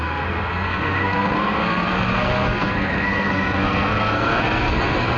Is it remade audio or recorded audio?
remade